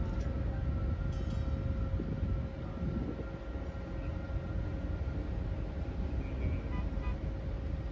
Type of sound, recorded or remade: recorded